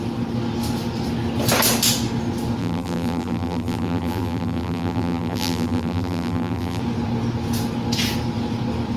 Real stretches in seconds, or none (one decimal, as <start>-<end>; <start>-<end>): 0.0-2.6; 6.8-9.0